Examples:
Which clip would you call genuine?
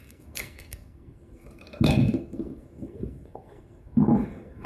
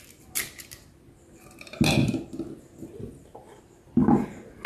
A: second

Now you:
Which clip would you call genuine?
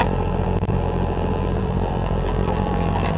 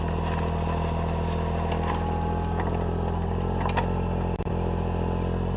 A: second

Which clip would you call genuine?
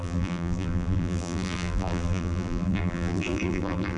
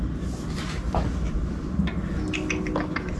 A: second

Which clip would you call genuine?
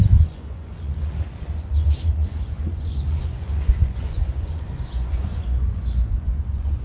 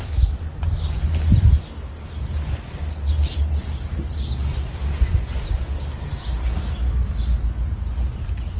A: second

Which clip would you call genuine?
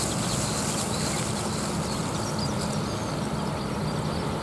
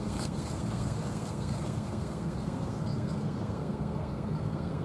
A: first